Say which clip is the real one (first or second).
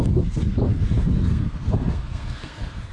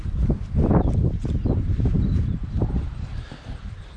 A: second